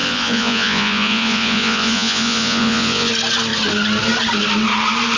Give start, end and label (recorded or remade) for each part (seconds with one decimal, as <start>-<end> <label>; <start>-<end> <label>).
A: 0.0-3.1 remade; 3.1-5.2 recorded